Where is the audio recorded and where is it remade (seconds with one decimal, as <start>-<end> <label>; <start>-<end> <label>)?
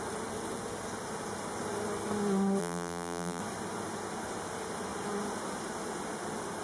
0.0-2.6 recorded; 2.6-3.4 remade; 3.4-6.6 recorded